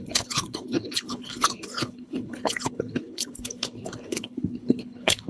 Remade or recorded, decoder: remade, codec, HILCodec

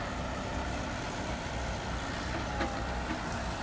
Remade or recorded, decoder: recorded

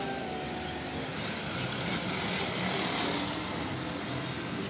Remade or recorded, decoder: recorded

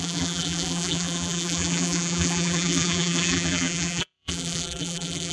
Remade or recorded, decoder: remade, vocoder, BigVGAN v2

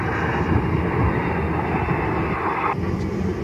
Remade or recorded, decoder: recorded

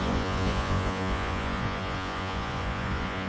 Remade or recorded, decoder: remade, vocoder, Vocos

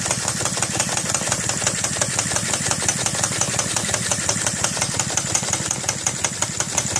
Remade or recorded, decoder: recorded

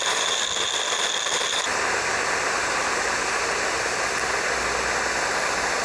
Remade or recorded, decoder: recorded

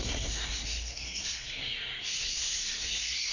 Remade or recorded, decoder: remade, codec, SNAC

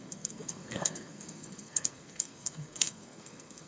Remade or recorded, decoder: remade, codec, SNAC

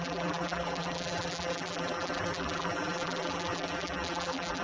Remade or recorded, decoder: remade, vocoder, BigVGAN v2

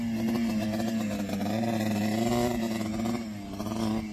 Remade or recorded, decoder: recorded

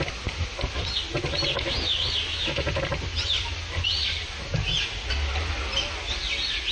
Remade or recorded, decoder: recorded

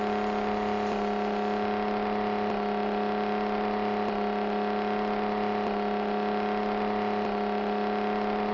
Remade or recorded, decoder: recorded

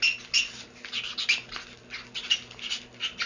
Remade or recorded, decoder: recorded